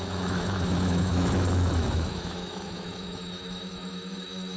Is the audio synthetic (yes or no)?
yes